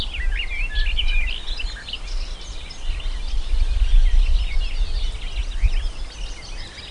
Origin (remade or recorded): recorded